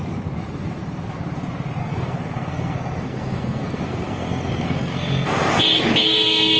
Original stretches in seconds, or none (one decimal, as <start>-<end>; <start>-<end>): 0.0-1.8; 5.6-6.0

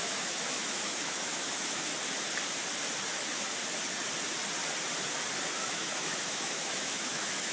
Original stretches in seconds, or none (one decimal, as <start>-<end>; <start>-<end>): 1.9-5.6

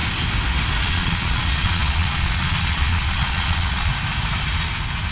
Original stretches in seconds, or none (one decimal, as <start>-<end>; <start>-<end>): 0.0-0.8; 3.9-5.1

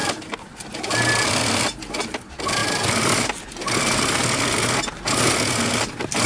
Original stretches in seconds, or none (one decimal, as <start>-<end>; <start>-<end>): 0.0-6.3